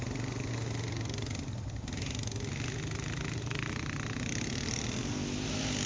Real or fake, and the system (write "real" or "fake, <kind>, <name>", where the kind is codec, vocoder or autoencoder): real